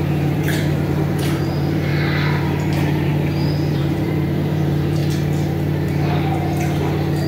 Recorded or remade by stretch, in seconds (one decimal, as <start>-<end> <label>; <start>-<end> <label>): 0.0-1.9 remade; 1.9-2.4 recorded; 2.4-3.1 remade; 3.1-3.7 recorded; 3.7-5.0 remade; 5.0-7.3 recorded